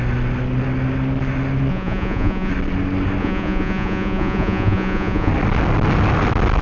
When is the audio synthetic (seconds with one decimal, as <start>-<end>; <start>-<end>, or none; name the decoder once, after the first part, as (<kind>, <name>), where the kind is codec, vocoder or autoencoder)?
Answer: 1.7-2.5 (vocoder, Vocos); 3.2-5.3